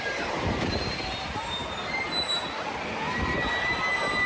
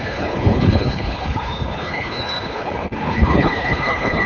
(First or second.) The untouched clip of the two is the first